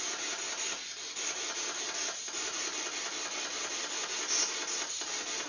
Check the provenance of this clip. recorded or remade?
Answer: recorded